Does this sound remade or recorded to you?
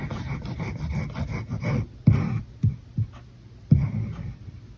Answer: recorded